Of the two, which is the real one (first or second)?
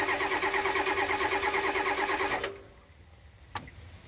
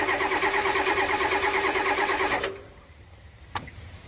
first